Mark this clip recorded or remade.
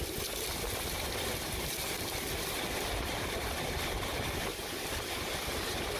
recorded